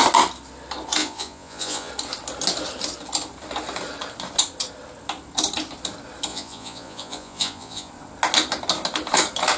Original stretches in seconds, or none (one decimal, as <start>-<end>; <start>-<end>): 0.0-1.0; 1.9-6.3; 7.9-9.6